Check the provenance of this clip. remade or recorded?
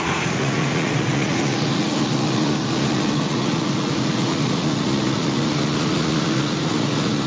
remade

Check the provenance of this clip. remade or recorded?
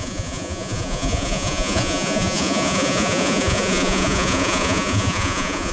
remade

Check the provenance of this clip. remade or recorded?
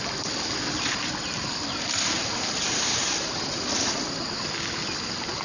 recorded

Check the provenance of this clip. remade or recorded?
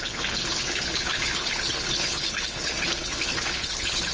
remade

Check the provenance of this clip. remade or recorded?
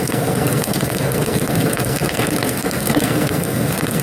remade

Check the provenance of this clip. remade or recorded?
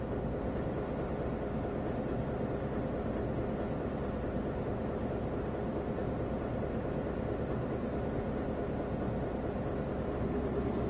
recorded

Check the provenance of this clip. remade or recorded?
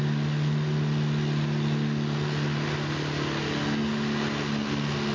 recorded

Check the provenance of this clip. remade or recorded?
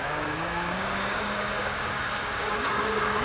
remade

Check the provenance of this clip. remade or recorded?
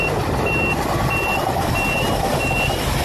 recorded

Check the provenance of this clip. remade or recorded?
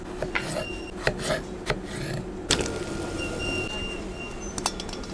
recorded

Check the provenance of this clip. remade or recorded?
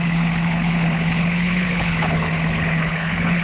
remade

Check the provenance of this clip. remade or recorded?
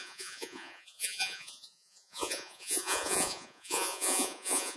remade